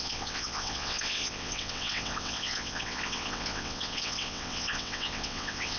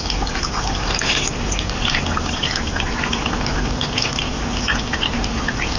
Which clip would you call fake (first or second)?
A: first